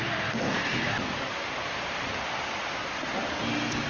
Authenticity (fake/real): real